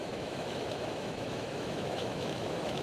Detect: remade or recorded remade